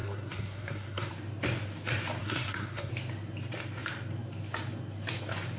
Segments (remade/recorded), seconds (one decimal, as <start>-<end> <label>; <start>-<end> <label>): 0.0-1.1 remade; 1.1-2.2 recorded; 2.2-2.9 remade; 2.9-5.6 recorded